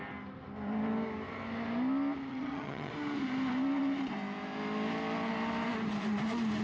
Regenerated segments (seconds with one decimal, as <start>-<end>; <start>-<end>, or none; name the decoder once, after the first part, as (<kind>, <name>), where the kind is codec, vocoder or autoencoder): 2.3-2.9 (vocoder, HiFi-GAN)